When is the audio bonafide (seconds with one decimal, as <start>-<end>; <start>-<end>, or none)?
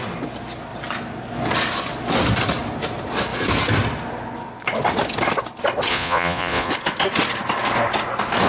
0.0-5.9; 6.7-8.5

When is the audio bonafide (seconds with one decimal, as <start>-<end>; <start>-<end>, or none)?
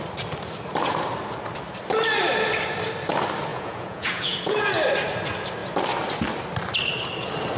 0.0-3.5; 4.7-7.6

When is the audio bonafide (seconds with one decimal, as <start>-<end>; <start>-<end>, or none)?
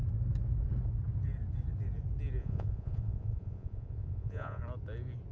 0.0-2.4; 4.6-5.3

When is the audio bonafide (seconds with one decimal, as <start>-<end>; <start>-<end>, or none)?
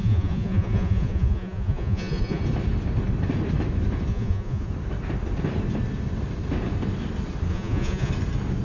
2.4-4.1; 4.7-7.5; 8.1-8.6